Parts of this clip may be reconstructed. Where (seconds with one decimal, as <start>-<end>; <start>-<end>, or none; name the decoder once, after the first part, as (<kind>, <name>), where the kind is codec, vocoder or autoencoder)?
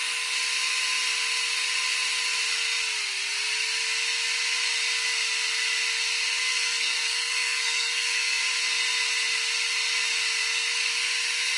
6.5-8.4 (codec, SNAC)